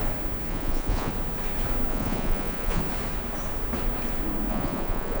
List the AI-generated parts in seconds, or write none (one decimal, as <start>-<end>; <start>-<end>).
0.5-1.1; 1.9-2.8; 4.5-5.2